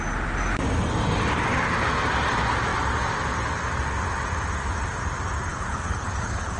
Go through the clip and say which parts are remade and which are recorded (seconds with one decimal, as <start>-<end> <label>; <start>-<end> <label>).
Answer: 0.0-5.5 recorded; 5.5-6.6 remade